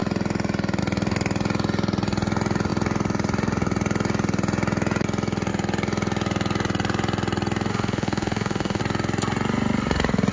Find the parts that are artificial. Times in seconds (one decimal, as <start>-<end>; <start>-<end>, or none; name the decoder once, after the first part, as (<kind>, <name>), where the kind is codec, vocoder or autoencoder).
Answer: 7.7-8.8 (autoencoder, DAC-VAE)